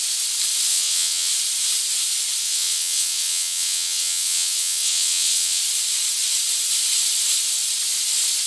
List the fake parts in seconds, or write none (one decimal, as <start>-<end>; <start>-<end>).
0.7-1.3; 2.4-5.6